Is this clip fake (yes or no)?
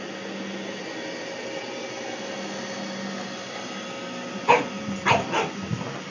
no